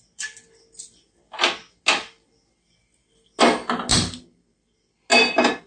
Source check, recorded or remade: recorded